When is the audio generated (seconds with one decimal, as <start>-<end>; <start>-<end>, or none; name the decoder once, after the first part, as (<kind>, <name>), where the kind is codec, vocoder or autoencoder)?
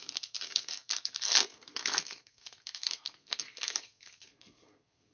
0.0-5.1 (codec, SNAC)